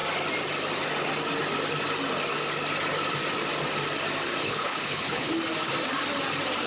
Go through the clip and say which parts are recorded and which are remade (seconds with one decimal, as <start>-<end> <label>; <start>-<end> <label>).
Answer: 0.0-4.4 recorded; 4.4-5.3 remade; 5.3-6.7 recorded

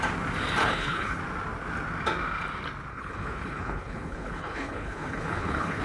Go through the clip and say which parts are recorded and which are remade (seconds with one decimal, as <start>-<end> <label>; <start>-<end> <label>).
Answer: 0.0-0.6 recorded; 0.6-1.2 remade; 1.2-2.9 recorded; 2.9-5.8 remade

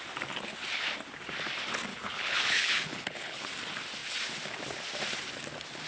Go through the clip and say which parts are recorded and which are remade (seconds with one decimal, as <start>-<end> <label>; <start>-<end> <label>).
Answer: 0.0-1.9 recorded; 1.9-3.5 remade; 3.5-5.9 recorded

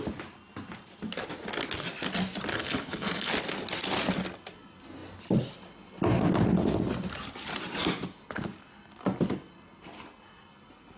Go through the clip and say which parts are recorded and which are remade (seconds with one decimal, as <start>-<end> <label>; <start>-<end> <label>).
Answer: 0.0-2.5 recorded; 2.5-3.3 remade; 3.3-11.0 recorded

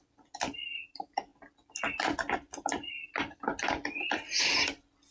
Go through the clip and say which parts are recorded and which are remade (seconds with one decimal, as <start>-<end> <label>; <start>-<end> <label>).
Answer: 0.0-5.1 recorded